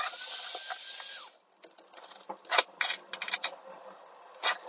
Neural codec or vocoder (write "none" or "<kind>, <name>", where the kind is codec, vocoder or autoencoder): none